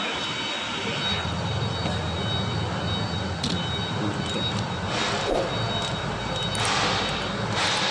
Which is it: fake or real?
real